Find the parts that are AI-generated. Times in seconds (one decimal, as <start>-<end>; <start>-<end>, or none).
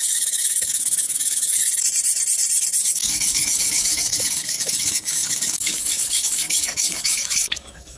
0.0-1.6; 2.8-8.0